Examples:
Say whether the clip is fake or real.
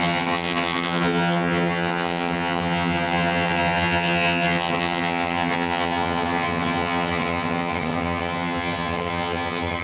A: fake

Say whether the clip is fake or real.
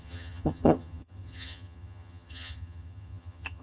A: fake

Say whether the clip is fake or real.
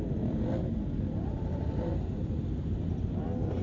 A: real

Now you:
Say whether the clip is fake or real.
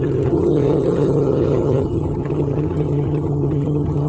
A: fake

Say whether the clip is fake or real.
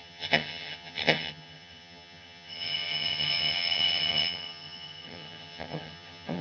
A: fake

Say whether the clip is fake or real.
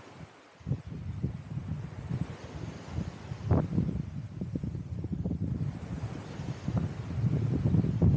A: real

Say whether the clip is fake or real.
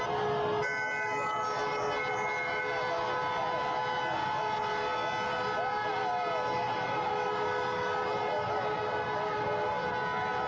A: real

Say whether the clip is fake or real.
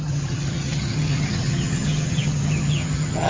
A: fake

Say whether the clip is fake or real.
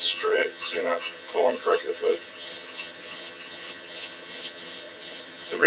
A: fake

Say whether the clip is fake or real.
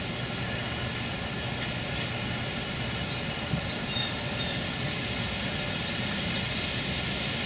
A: real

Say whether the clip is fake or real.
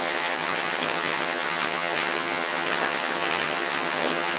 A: fake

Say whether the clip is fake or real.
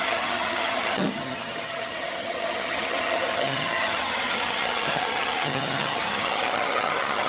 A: fake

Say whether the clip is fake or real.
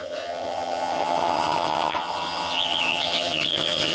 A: fake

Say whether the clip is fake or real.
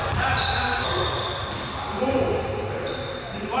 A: real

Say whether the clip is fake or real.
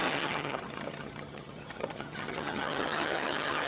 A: fake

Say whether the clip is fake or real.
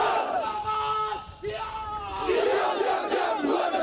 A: real